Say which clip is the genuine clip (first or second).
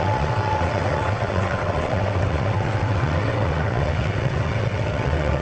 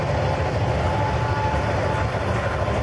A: second